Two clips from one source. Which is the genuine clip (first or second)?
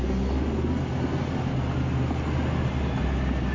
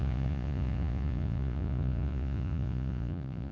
first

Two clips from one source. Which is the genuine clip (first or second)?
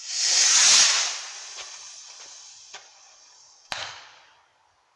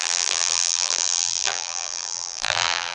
first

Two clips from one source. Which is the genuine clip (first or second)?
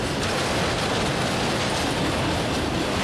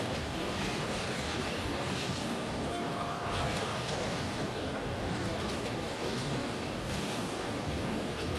first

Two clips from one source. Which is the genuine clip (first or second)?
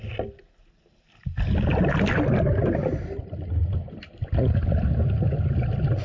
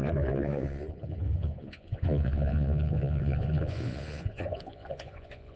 first